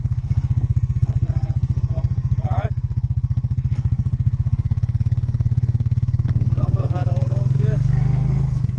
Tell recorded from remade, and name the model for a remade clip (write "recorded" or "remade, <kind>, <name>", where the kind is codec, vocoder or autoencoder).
remade, codec, SNAC